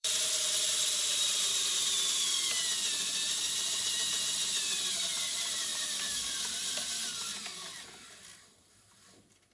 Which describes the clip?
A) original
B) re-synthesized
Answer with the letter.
B